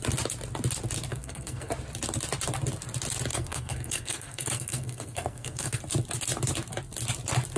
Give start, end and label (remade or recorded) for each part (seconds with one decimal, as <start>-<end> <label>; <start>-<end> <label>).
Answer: 0.0-1.1 recorded; 1.1-1.7 remade; 1.7-3.3 recorded; 3.3-5.8 remade; 5.8-7.6 recorded